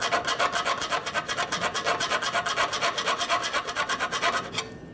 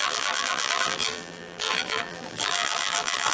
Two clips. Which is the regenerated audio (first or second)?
second